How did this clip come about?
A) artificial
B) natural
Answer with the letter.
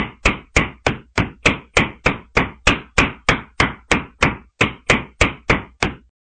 B